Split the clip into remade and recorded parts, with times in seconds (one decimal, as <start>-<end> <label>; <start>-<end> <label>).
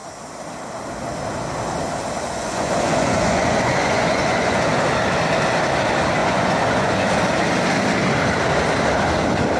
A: 0.0-2.3 recorded; 2.3-4.7 remade; 4.7-6.2 recorded; 6.2-7.1 remade; 7.1-9.6 recorded